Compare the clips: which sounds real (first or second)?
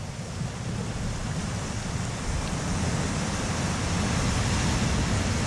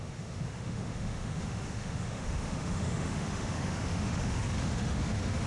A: first